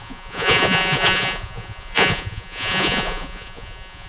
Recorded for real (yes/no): no